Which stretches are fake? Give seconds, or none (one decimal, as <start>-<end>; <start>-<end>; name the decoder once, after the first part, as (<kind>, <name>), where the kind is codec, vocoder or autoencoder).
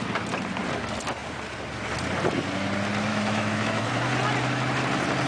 3.1-3.9 (autoencoder, DAC-VAE)